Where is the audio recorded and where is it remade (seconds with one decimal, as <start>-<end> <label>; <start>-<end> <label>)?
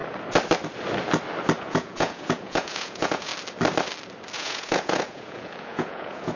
0.0-1.6 recorded; 1.6-3.3 remade; 3.3-4.3 recorded; 4.3-6.4 remade